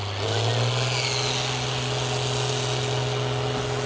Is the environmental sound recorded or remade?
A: recorded